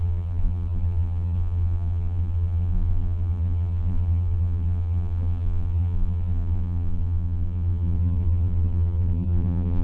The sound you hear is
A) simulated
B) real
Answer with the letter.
A